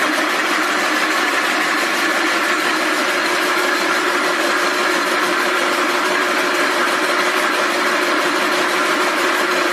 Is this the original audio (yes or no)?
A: no